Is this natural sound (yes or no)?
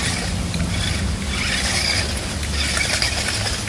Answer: yes